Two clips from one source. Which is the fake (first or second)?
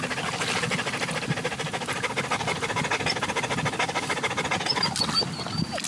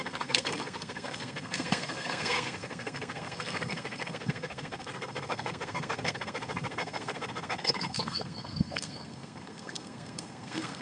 second